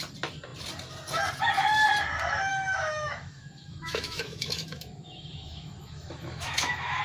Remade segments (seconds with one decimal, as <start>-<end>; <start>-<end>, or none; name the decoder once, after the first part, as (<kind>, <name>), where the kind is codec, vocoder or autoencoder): 2.5-7.0 (autoencoder, DAC-VAE)